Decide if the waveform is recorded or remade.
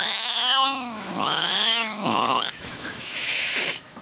remade